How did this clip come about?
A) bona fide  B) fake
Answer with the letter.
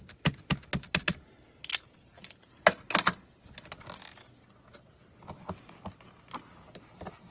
A